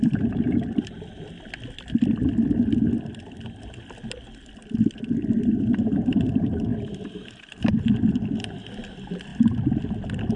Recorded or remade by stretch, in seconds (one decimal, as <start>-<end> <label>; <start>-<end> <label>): 0.0-6.7 recorded; 6.7-7.9 remade; 7.9-10.4 recorded